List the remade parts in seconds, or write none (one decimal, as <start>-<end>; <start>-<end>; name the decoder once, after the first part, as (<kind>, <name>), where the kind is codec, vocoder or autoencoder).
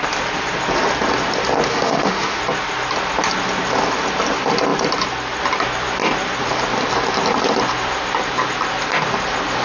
1.7-2.4 (autoencoder, DAC-VAE)